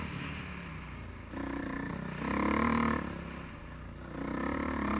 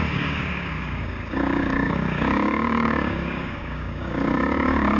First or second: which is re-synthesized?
second